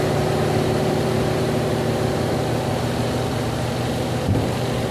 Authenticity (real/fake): fake